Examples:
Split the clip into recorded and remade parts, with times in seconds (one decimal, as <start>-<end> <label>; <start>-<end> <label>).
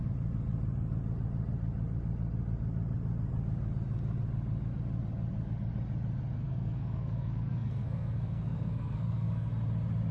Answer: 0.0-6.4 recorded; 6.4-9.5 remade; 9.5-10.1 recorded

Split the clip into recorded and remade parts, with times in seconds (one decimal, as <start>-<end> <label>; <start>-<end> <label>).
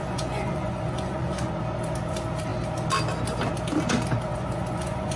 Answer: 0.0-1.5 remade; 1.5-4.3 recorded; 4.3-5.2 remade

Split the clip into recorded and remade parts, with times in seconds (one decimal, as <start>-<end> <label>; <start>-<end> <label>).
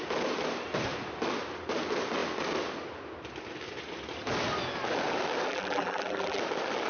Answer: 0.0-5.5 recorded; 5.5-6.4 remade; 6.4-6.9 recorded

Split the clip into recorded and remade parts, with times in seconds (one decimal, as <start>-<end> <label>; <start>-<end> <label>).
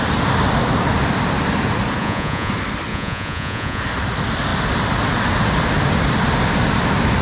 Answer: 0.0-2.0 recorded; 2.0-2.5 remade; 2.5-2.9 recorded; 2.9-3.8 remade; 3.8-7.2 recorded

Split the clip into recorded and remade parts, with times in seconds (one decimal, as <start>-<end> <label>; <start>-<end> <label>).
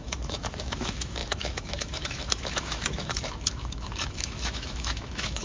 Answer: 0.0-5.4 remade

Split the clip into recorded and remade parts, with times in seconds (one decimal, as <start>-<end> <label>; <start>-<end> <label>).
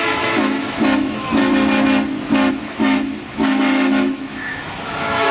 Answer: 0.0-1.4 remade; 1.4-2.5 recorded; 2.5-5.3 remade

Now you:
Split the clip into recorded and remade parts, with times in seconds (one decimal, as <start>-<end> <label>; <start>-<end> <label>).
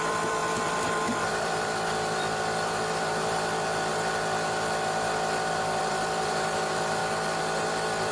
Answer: 0.0-3.9 remade; 3.9-5.8 recorded; 5.8-7.0 remade; 7.0-8.1 recorded